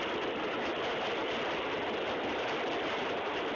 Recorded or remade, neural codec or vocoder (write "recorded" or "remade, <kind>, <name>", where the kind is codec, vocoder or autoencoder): remade, vocoder, BigVGAN v2